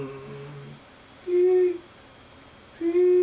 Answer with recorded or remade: recorded